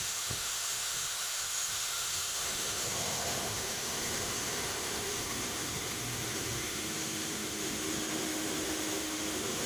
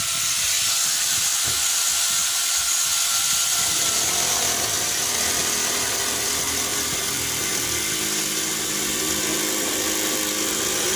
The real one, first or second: second